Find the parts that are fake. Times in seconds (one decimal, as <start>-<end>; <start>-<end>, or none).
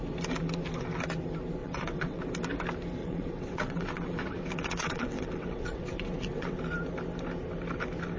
1.6-2.2; 3.0-6.6